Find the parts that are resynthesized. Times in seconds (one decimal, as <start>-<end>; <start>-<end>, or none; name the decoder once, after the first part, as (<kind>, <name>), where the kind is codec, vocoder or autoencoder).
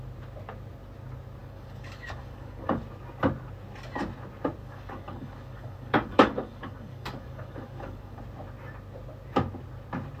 1.4-2.8 (codec, DAC); 4.6-8.2